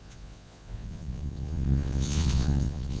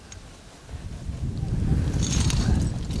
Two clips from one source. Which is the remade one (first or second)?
first